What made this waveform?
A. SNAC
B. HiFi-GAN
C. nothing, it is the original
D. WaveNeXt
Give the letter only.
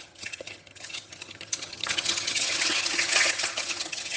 B